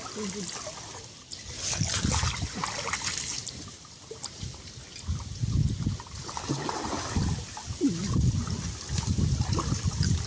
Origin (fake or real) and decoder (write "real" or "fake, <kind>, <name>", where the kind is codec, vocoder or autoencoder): real